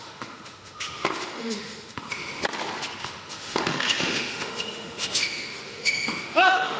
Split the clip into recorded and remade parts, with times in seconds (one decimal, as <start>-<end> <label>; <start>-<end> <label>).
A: 0.0-2.4 remade; 2.4-3.0 recorded; 3.0-6.8 remade